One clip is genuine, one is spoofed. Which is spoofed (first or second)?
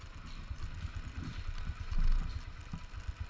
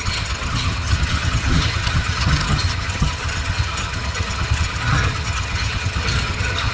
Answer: second